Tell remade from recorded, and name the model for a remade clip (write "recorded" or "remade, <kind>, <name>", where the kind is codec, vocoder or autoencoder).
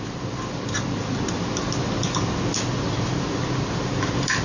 recorded